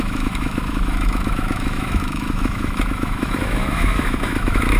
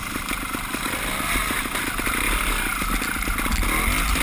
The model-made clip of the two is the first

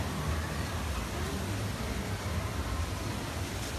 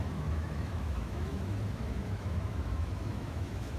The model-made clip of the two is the second